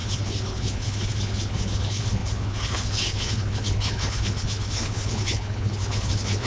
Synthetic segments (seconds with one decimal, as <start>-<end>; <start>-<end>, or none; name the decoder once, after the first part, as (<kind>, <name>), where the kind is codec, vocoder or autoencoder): 0.0-6.5 (codec, HILCodec)

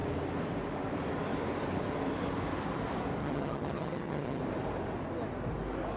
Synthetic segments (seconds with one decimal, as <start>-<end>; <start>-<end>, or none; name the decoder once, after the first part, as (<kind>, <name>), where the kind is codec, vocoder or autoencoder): 3.2-4.4 (vocoder, HiFi-GAN)

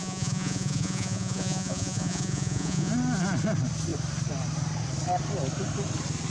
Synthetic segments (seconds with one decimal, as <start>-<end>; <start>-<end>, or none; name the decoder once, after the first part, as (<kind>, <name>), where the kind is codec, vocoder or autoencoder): 0.0-2.9 (vocoder, Vocos)